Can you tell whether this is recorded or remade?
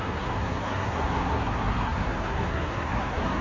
remade